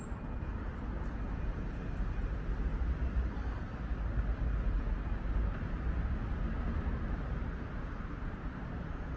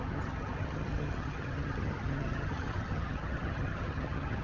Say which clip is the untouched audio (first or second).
first